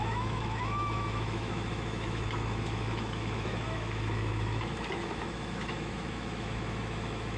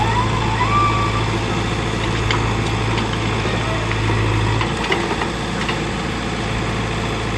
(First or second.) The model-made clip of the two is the first